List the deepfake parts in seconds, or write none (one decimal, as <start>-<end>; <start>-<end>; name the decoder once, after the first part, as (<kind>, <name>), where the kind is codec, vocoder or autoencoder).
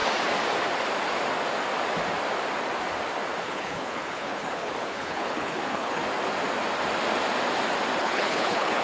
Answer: 3.4-6.0 (codec, HILCodec); 8.0-8.8